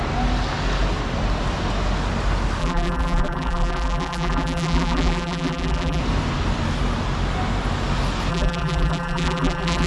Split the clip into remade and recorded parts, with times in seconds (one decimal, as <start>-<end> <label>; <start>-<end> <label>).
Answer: 0.0-2.6 recorded; 2.6-6.0 remade; 6.0-8.3 recorded; 8.3-9.9 remade